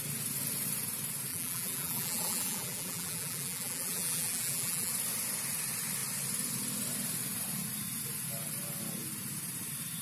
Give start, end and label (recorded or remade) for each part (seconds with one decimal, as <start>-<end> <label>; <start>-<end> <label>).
0.0-1.3 recorded; 1.3-4.9 remade; 4.9-10.0 recorded